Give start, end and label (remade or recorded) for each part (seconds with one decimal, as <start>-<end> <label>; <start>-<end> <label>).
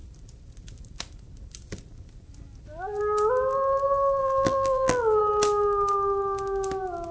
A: 0.0-4.2 recorded; 4.2-5.2 remade; 5.2-7.1 recorded